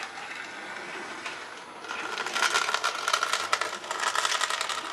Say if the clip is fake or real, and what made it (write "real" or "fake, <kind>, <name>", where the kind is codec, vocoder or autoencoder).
real